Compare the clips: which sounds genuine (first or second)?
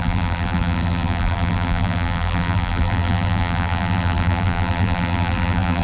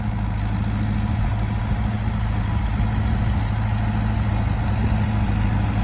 second